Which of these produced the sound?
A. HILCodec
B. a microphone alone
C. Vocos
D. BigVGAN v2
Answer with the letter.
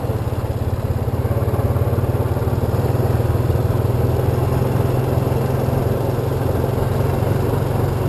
B